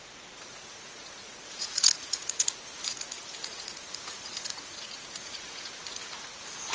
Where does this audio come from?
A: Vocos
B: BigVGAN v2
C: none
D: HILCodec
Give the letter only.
A